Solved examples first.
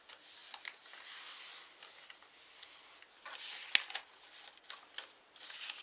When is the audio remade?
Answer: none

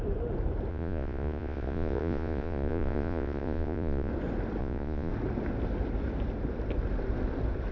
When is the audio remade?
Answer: 0.7-4.1 (vocoder, Vocos); 4.6-5.1

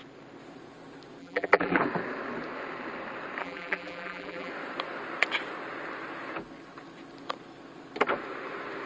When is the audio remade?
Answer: 1.2-1.8 (vocoder, BigVGAN v2); 3.4-4.5

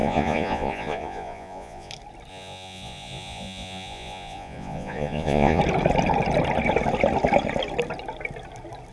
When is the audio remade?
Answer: 0.0-1.9 (vocoder, Vocos); 2.3-5.6

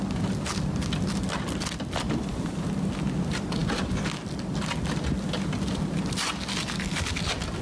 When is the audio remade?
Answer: none

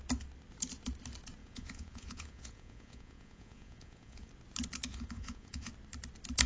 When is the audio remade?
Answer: 1.4-4.3 (vocoder, Vocos); 4.9-5.7